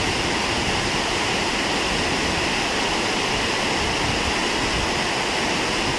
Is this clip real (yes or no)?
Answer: yes